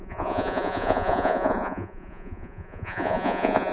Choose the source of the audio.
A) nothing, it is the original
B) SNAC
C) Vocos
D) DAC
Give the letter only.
C